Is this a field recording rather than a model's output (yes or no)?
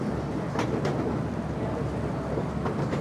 yes